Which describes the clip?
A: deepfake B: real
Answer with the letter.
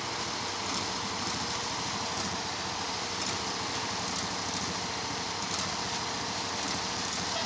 B